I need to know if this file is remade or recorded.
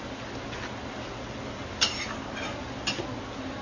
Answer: recorded